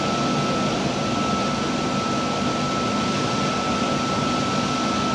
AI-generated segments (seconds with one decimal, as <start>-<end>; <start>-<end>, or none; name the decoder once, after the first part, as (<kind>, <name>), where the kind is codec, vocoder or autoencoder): none